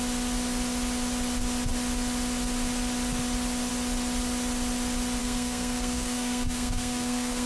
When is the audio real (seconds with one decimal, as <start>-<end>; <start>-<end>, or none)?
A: 0.0-5.2